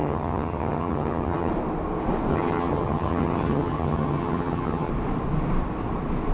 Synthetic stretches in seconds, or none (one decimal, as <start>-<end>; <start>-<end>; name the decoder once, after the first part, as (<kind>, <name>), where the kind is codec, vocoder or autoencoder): 0.0-1.5 (vocoder, HiFi-GAN); 2.3-4.9